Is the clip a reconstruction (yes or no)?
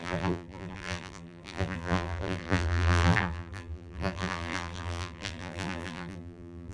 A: yes